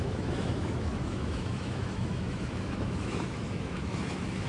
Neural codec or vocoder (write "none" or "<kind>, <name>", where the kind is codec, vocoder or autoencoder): autoencoder, DAC-VAE